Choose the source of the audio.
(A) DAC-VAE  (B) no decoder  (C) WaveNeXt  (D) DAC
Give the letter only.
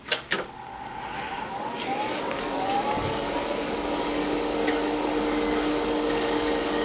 D